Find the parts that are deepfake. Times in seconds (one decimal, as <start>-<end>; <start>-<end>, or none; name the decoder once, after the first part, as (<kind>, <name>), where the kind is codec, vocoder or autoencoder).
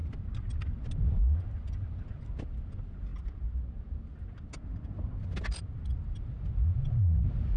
none